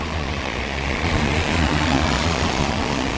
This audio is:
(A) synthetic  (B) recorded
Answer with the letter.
A